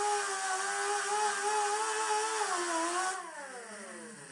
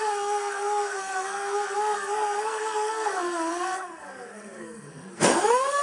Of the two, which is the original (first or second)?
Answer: first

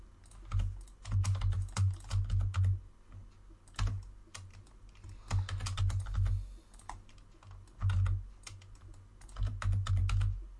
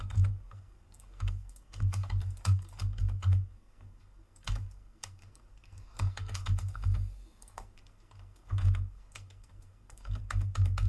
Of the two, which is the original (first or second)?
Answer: first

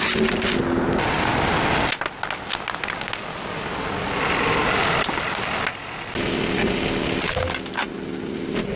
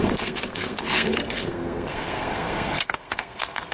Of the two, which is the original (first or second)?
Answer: first